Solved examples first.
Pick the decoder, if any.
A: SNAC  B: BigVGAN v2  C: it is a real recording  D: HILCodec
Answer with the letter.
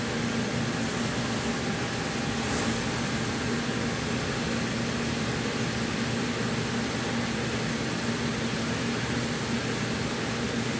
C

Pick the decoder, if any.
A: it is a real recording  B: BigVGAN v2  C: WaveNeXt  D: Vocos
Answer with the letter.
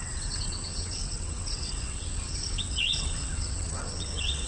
C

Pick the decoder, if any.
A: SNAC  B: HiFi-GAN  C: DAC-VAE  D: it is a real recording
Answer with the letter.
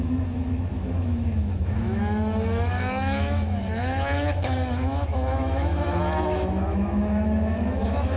C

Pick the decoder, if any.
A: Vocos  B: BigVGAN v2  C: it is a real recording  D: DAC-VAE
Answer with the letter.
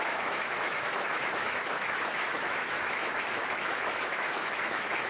D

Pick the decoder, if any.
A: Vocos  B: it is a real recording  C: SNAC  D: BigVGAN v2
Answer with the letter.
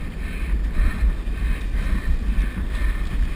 B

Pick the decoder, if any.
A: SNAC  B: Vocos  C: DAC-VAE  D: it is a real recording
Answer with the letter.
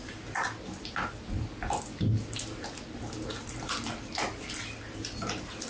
D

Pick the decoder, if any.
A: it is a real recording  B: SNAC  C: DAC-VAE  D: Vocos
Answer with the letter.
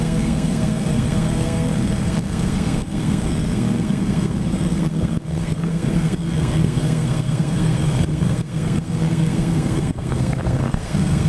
B